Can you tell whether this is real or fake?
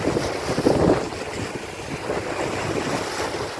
real